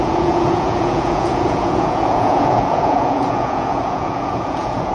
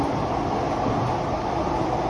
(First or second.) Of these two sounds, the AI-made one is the first